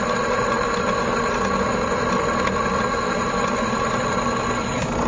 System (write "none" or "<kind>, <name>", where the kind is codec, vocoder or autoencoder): none